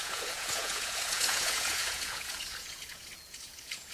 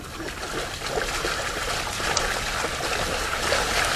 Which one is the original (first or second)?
second